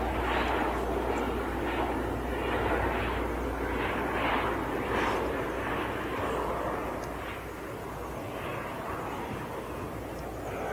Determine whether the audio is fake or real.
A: real